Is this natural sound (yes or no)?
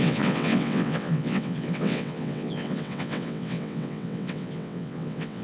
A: no